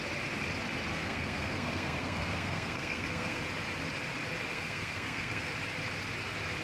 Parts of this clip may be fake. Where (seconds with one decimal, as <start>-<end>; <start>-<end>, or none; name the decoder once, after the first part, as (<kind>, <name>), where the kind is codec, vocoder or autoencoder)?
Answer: 0.9-3.4 (codec, SNAC); 4.5-5.5